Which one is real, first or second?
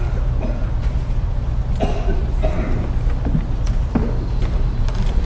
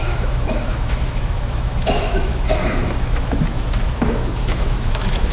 first